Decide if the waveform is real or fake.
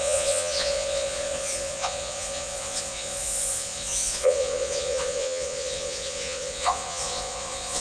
fake